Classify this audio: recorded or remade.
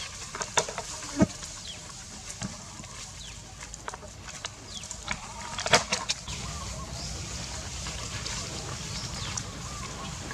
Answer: remade